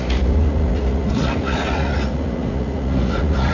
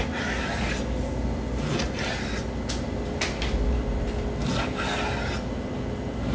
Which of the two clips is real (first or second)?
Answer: second